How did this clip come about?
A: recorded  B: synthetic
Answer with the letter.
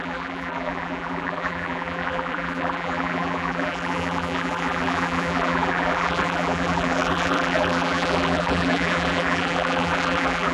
B